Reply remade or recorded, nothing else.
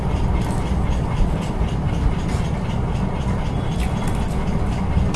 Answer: recorded